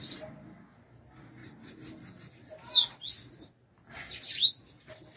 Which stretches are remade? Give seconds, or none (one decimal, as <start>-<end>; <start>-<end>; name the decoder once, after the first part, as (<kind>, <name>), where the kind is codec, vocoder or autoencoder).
none